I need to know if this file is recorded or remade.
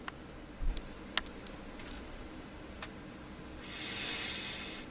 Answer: recorded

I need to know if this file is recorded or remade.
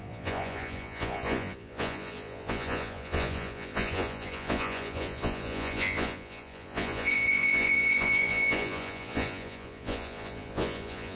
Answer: remade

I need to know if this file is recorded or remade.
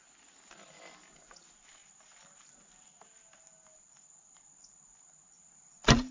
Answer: recorded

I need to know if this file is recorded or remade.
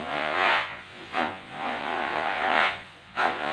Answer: remade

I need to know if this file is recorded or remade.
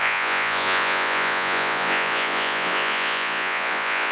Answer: remade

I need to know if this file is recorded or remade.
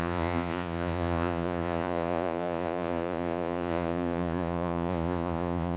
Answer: remade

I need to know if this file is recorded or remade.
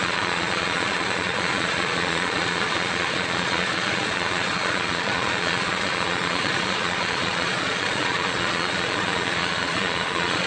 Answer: remade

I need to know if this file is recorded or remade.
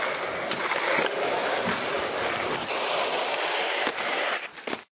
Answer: recorded